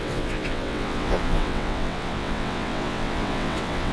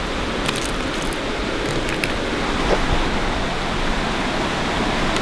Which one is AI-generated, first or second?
first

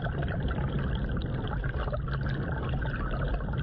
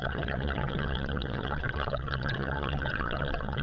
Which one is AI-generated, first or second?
second